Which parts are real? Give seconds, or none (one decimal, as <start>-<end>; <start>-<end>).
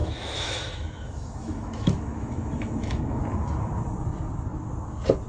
3.2-5.3